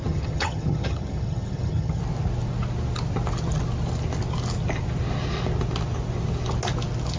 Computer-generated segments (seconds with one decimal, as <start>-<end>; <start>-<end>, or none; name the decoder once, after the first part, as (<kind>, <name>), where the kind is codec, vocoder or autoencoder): 0.0-2.0 (vocoder, HiFi-GAN)